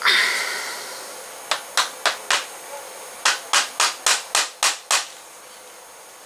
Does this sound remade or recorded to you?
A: recorded